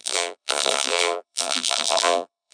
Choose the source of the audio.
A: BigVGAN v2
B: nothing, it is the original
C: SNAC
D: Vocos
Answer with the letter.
A